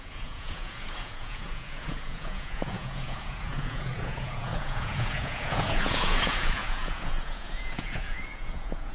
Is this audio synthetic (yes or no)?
yes